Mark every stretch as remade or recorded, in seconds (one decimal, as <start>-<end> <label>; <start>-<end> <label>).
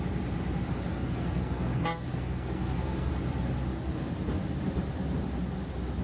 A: 0.0-0.9 recorded; 0.9-3.1 remade; 3.1-6.0 recorded